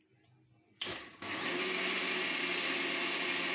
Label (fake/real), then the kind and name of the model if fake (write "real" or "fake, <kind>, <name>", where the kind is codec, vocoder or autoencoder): real